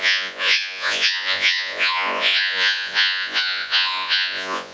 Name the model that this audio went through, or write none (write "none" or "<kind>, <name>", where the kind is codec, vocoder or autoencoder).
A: vocoder, Vocos